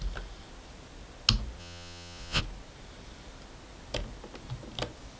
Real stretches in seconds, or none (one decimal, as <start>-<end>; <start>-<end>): 0.0-1.6; 2.4-5.2

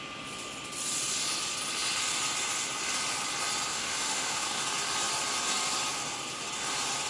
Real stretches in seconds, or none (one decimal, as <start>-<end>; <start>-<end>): 0.0-3.7; 4.6-7.1